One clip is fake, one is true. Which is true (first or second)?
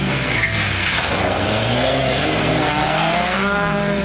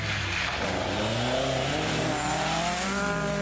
second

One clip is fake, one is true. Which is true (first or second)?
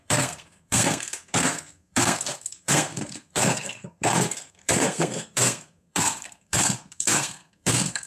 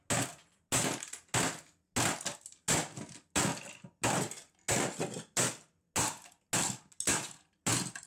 second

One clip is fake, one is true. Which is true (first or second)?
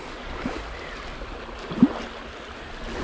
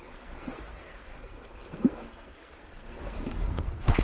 first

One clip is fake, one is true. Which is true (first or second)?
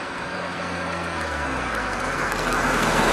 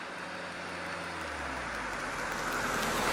second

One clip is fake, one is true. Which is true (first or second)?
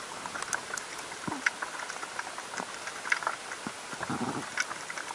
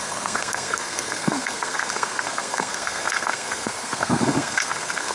first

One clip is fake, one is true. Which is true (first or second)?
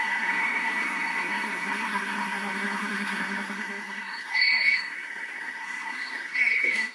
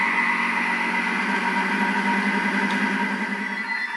second